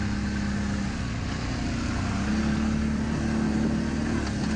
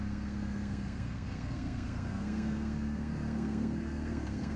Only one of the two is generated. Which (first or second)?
second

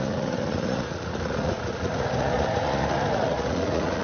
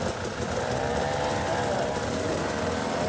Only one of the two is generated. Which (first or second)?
first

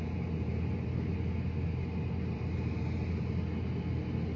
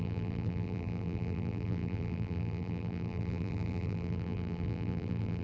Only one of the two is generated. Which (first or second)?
second